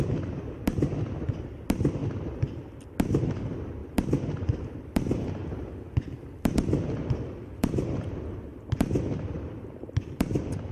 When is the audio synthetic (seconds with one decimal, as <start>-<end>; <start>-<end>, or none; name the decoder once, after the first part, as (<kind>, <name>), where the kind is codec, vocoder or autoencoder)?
0.0-2.0 (vocoder, BigVGAN v2); 3.2-5.4; 8.0-10.7